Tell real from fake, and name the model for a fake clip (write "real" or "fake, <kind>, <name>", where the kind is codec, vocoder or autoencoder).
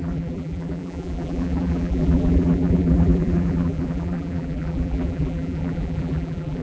fake, vocoder, BigVGAN v2